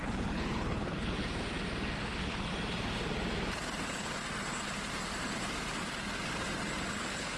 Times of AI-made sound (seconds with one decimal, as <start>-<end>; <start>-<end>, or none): 0.0-1.2; 2.0-2.5; 6.9-7.4